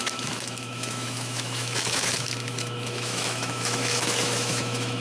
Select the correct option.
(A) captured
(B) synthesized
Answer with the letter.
B